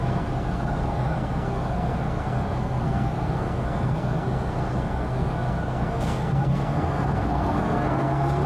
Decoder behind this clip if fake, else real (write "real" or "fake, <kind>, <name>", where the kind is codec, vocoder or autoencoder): fake, codec, SNAC